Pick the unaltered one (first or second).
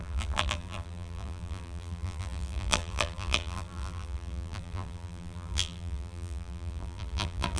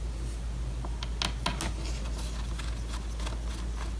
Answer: second